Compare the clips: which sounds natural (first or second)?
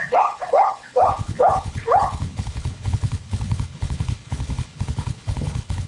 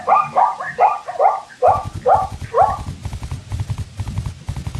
second